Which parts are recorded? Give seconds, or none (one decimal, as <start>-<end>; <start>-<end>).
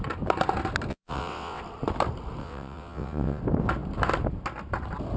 0.0-0.9; 1.6-2.4; 3.4-5.2